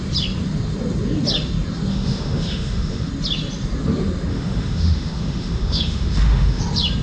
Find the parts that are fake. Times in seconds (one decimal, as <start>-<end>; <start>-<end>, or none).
1.9-3.1; 4.3-6.6